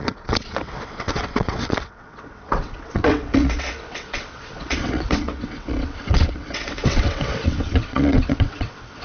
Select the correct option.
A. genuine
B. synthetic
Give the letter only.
B